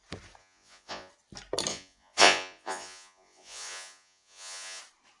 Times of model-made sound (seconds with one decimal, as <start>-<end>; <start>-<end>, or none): 0.4-1.1; 1.7-4.8